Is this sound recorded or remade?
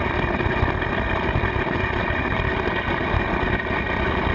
recorded